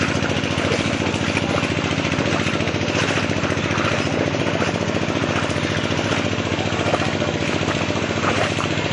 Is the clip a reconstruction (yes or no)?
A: no